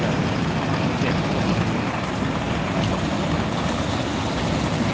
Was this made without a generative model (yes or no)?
yes